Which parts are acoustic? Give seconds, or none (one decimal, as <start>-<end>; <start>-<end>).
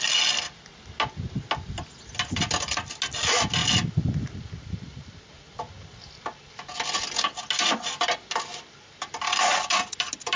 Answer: 0.0-10.4